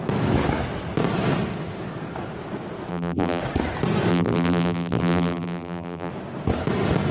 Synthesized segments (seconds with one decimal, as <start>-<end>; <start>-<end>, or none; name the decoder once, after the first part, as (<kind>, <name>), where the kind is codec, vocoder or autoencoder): 2.9-3.4 (vocoder, BigVGAN v2); 4.1-6.1